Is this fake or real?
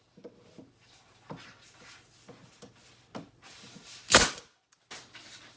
real